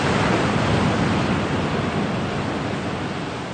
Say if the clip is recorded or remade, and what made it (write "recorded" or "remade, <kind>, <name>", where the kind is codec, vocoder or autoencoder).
recorded